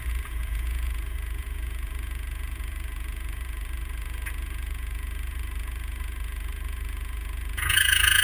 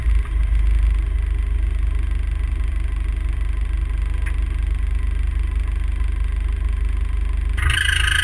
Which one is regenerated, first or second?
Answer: first